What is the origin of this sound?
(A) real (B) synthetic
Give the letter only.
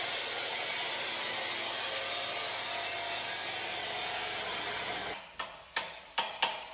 A